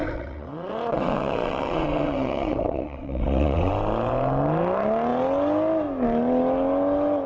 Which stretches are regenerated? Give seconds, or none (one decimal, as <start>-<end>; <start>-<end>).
0.0-3.7